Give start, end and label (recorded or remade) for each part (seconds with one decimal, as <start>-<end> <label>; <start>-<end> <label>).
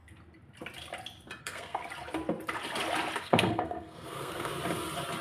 0.0-1.4 recorded; 1.4-1.8 remade; 1.8-3.2 recorded; 3.2-4.5 remade; 4.5-5.2 recorded